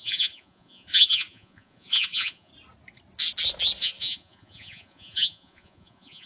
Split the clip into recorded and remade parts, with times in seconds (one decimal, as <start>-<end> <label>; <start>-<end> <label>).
0.0-2.5 remade; 2.5-3.8 recorded; 3.8-6.3 remade